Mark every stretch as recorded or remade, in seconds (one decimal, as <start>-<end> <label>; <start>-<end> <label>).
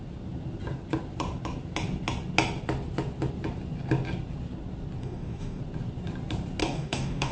0.0-5.0 recorded; 5.0-5.6 remade; 5.6-6.6 recorded; 6.6-7.3 remade